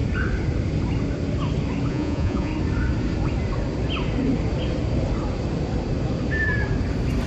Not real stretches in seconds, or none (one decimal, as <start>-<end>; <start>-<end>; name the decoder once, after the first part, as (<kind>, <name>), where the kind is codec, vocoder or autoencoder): 1.9-2.5 (vocoder, Vocos)